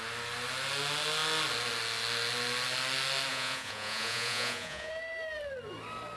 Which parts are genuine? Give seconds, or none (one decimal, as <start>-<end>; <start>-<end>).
0.0-3.3; 4.9-6.2